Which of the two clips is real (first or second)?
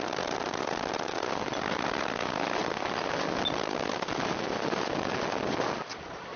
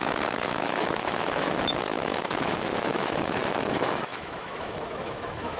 first